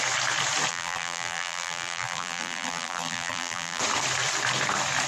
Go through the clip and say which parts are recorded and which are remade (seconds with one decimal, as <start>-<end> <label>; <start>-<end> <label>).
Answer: 0.0-0.7 recorded; 0.7-3.8 remade; 3.8-5.1 recorded